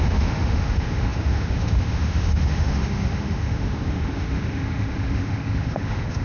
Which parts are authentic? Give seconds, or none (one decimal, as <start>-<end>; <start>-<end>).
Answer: none